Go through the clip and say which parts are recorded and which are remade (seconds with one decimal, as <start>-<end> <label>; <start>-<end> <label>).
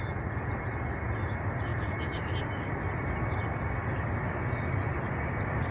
0.0-1.7 recorded; 1.7-2.4 remade; 2.4-5.7 recorded